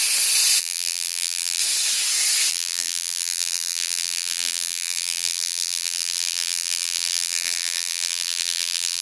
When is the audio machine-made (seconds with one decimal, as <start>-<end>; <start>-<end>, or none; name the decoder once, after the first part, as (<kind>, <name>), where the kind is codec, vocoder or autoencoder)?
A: 0.6-1.6 (vocoder, BigVGAN v2); 2.5-9.0